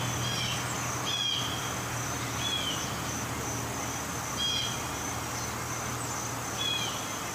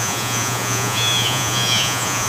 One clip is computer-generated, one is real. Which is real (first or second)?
first